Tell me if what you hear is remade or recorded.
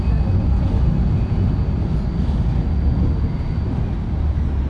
recorded